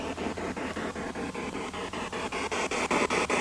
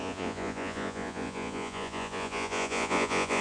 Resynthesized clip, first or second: second